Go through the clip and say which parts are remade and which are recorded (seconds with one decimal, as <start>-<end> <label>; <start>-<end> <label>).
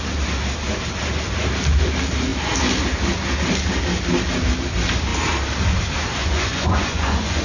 0.0-6.2 recorded; 6.2-7.4 remade